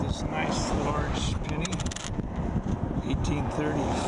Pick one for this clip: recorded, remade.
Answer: recorded